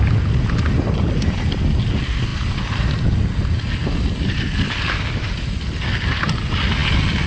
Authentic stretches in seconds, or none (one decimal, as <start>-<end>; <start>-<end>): 0.0-7.3